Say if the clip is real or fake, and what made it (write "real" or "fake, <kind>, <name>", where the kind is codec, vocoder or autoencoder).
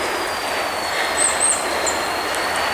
real